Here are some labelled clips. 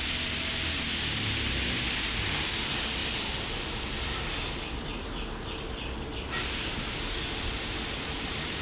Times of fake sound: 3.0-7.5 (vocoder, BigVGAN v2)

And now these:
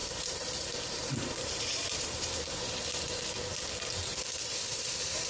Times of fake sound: 0.0-3.2 (vocoder, BigVGAN v2); 4.1-5.3

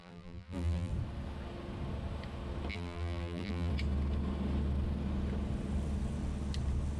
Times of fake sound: 0.0-0.9 (vocoder, BigVGAN v2); 2.7-3.7

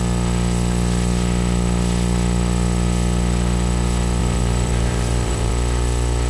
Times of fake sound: 4.2-5.5 (vocoder, BigVGAN v2)